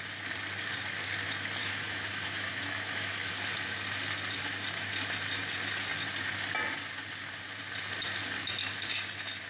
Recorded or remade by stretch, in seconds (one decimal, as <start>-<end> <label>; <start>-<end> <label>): 0.0-1.6 recorded; 1.6-3.3 remade; 3.3-9.5 recorded